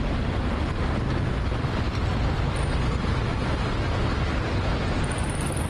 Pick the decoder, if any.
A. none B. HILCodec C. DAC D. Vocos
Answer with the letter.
A